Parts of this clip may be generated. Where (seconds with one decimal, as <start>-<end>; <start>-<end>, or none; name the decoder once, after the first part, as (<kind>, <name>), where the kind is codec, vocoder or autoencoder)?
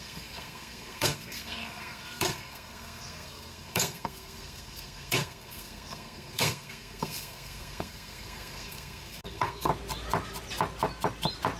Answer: 0.0-9.7 (codec, SNAC)